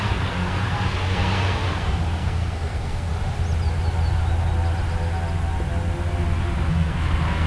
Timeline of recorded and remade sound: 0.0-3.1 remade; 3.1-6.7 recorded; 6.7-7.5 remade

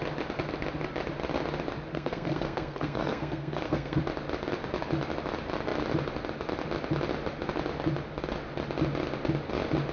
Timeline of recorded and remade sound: 0.0-1.9 recorded; 1.9-4.0 remade; 4.0-9.9 recorded

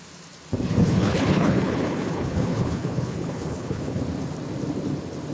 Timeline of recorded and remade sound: 0.0-0.8 recorded; 0.8-4.0 remade; 4.0-5.3 recorded

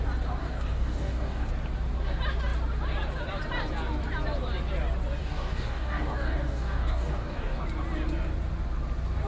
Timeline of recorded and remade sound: 0.0-0.4 recorded; 0.4-1.5 remade; 1.5-5.2 recorded; 5.2-7.6 remade; 7.6-9.3 recorded

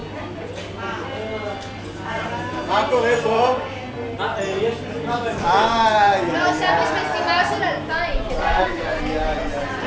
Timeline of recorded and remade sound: 0.0-8.4 recorded; 8.4-9.0 remade; 9.0-9.9 recorded

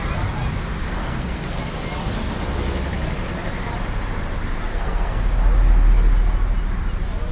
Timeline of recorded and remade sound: 0.0-0.8 recorded; 0.8-1.6 remade; 1.6-4.7 recorded; 4.7-5.2 remade; 5.2-7.3 recorded